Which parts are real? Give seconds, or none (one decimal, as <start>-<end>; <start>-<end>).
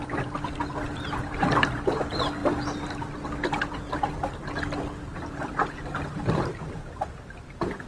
0.0-5.1; 7.1-7.9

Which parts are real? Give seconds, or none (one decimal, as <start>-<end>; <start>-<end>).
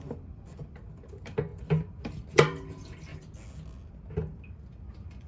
3.1-4.1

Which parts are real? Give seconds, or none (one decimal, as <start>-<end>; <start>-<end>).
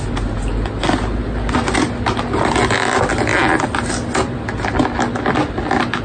0.0-6.0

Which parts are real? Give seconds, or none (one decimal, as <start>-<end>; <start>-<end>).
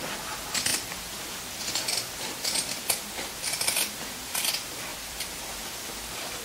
0.0-4.9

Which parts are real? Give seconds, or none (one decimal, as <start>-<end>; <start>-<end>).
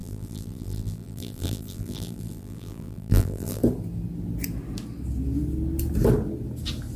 3.6-7.0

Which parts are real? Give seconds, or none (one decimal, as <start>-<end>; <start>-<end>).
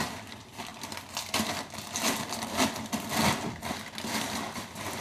0.0-5.0